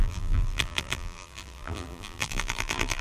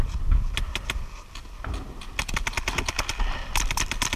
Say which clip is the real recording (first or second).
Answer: second